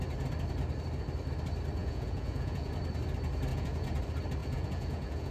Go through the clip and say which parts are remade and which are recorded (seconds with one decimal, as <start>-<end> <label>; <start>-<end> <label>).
0.0-1.8 recorded; 1.8-2.7 remade; 2.7-3.5 recorded; 3.5-4.0 remade; 4.0-4.4 recorded; 4.4-5.3 remade